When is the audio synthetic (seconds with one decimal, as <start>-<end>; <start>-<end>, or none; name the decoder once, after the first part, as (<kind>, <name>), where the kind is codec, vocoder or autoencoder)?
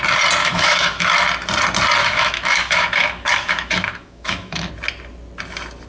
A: 0.4-1.1 (autoencoder, DAC-VAE); 2.0-4.7